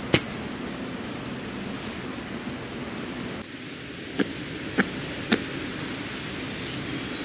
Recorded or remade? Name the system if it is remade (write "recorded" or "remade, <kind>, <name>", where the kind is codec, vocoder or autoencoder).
recorded